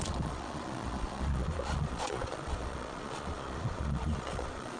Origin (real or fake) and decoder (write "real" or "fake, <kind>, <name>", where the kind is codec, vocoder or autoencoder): fake, vocoder, Vocos